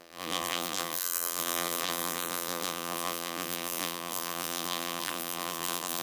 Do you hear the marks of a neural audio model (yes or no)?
yes